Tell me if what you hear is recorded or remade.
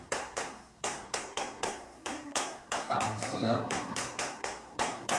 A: remade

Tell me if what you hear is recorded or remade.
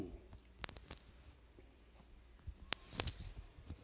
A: recorded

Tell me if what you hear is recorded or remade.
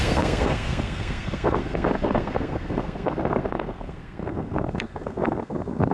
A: remade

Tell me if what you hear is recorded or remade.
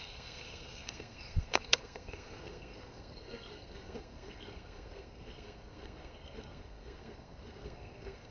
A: remade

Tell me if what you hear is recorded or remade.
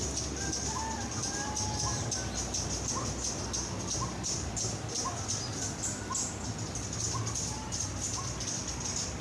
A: recorded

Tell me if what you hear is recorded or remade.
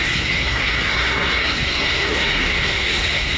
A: remade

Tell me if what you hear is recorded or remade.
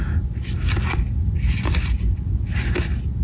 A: recorded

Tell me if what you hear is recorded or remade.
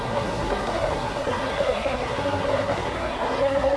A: remade